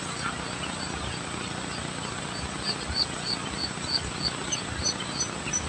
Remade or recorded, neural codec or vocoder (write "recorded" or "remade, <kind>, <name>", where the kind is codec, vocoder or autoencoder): recorded